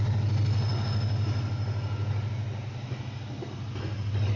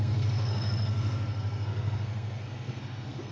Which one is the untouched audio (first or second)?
first